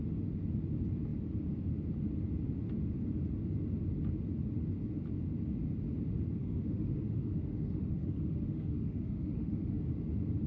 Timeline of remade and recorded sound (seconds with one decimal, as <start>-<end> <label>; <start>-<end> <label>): 0.0-6.4 recorded; 6.4-9.8 remade; 9.8-10.5 recorded